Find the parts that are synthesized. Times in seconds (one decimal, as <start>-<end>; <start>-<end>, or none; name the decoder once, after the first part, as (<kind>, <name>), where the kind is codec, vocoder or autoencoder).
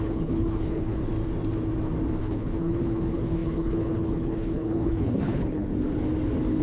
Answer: 0.0-1.0 (codec, HILCodec); 2.2-5.7